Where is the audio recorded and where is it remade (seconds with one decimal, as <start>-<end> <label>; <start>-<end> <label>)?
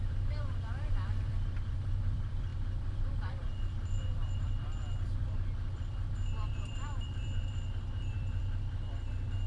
0.0-9.5 remade